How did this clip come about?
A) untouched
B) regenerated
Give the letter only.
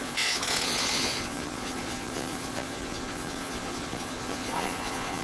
B